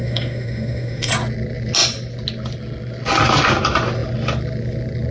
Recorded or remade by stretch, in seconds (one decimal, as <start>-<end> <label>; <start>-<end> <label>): 0.0-1.1 remade; 1.1-5.1 recorded